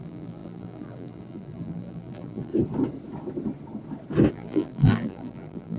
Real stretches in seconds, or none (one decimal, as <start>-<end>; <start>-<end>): 2.5-4.3